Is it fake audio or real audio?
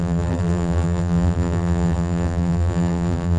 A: fake